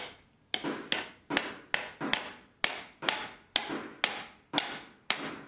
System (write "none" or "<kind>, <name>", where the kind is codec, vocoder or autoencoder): none